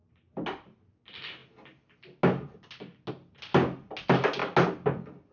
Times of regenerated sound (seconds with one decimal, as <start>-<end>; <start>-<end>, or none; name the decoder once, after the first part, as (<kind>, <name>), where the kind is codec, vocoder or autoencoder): none